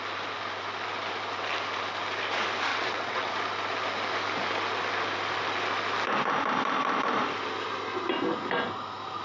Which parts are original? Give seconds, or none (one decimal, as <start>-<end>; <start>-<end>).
0.0-2.7; 3.3-9.2